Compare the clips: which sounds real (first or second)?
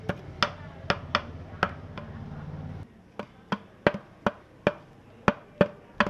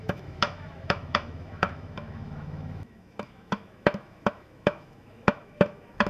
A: first